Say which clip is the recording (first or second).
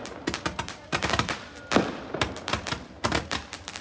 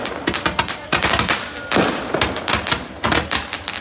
second